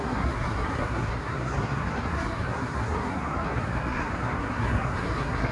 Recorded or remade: remade